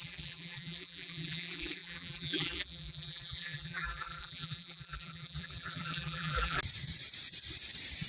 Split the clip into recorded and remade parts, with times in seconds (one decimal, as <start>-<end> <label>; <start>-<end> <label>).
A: 0.0-6.6 remade; 6.6-8.1 recorded